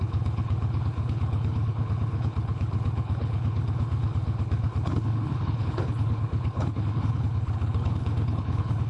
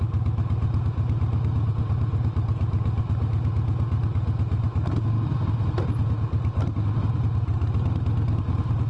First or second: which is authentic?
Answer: second